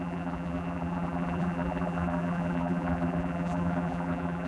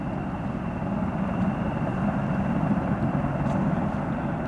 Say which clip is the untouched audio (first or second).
second